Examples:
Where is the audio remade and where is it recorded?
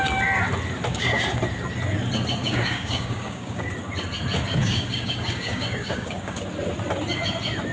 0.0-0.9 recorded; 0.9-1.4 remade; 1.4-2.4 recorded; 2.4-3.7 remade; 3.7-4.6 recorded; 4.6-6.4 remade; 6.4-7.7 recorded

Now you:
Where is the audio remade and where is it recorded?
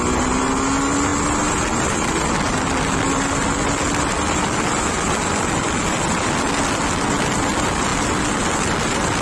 0.0-9.2 recorded